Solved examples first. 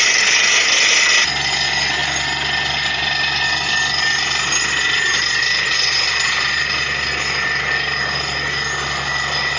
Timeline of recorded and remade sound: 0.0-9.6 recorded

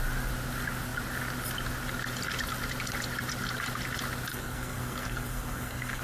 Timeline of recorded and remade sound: 0.0-4.3 recorded; 4.3-6.0 remade

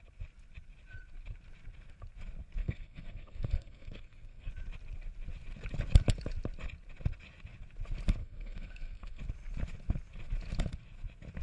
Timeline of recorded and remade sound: 0.0-2.6 recorded; 2.6-4.5 remade; 4.5-8.2 recorded; 8.2-9.2 remade; 9.2-11.4 recorded

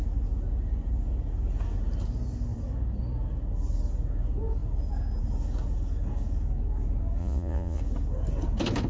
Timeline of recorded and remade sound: 0.0-7.2 recorded; 7.2-7.8 remade; 7.8-8.9 recorded

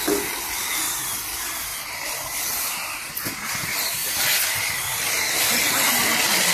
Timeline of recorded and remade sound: 0.0-6.5 recorded

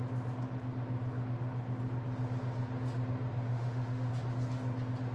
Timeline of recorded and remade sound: 0.0-3.5 recorded; 3.5-4.1 remade; 4.1-5.1 recorded